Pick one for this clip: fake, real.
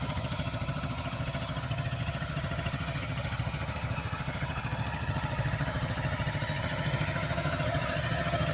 fake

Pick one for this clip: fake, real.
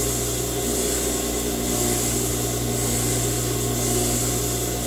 real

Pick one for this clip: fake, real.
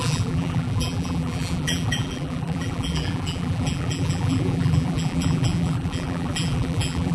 fake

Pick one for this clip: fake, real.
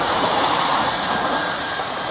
fake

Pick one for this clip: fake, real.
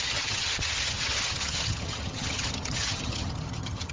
fake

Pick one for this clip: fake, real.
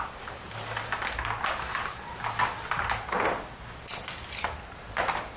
real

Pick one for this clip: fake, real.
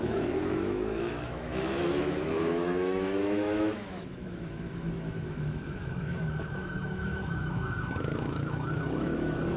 fake